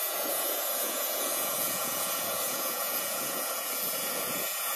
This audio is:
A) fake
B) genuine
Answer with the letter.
A